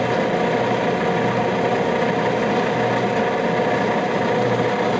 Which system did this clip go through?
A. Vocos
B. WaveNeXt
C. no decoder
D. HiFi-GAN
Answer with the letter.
C